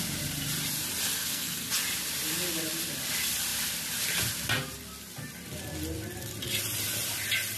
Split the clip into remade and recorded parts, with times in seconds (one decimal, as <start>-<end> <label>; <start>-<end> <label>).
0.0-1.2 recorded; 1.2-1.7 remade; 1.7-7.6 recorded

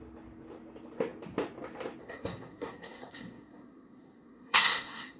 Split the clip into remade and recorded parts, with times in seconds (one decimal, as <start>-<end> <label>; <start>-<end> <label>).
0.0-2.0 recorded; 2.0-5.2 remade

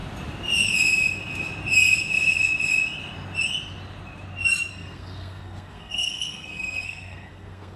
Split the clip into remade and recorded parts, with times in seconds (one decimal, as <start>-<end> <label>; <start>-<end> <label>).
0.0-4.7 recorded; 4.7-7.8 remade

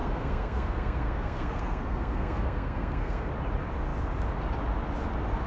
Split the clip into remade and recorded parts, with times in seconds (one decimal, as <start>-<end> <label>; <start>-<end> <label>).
0.0-3.3 remade; 3.3-5.5 recorded

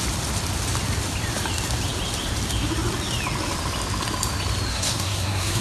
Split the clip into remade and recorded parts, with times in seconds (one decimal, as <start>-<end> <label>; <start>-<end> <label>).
0.0-4.7 recorded; 4.7-5.6 remade

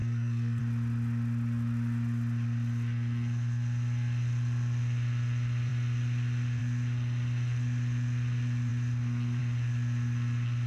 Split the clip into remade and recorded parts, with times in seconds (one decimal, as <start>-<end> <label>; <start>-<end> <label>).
0.0-0.6 remade; 0.6-10.7 recorded